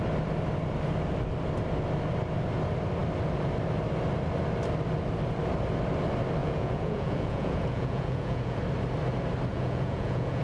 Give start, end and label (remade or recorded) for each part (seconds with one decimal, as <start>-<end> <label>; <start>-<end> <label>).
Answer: 0.0-6.4 recorded; 6.4-8.6 remade; 8.6-9.5 recorded; 9.5-10.4 remade